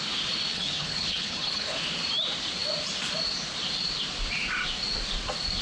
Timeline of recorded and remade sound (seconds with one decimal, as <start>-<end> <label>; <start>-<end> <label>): 0.0-0.5 recorded; 0.5-1.8 remade; 1.8-5.6 recorded